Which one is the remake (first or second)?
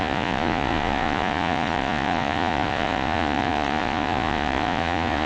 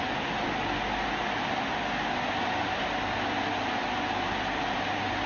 first